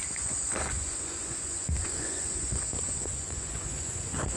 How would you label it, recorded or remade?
remade